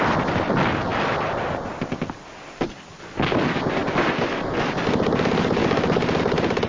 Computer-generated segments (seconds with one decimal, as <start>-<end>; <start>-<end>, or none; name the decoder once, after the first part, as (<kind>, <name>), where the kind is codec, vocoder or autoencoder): none